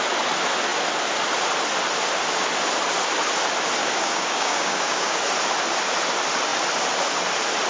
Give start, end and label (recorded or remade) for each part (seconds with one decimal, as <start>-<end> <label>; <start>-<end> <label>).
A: 0.0-3.8 recorded; 3.8-5.2 remade; 5.2-7.7 recorded